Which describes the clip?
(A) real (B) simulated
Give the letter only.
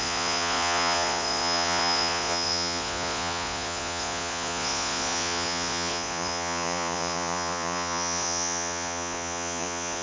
B